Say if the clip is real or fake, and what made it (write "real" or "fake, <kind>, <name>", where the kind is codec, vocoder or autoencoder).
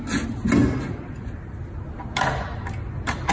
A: real